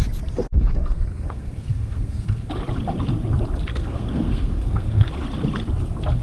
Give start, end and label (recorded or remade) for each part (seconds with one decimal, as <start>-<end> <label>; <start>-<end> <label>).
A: 0.0-0.4 recorded; 0.4-2.5 remade; 2.5-3.7 recorded; 3.7-5.1 remade; 5.1-6.2 recorded